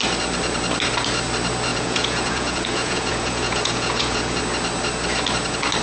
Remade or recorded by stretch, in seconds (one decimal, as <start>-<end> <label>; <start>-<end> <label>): 0.0-1.7 recorded; 1.7-4.4 remade; 4.4-5.8 recorded